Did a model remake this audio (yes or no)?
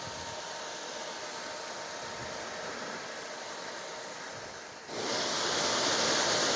no